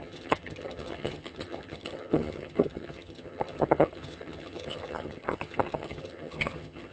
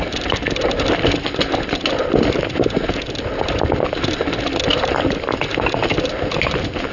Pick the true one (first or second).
second